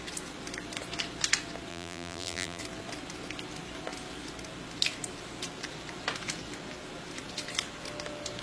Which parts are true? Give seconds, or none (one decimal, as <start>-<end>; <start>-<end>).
0.0-1.7; 2.6-8.4